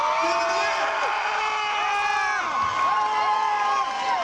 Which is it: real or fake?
real